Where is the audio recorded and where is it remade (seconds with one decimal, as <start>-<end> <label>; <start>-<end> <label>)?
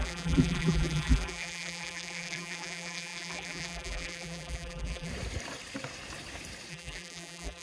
0.0-5.1 remade; 5.1-6.7 recorded; 6.7-7.6 remade